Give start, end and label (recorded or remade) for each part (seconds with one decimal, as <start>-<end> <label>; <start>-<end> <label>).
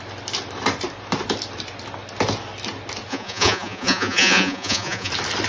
0.0-3.1 recorded; 3.1-5.1 remade; 5.1-5.5 recorded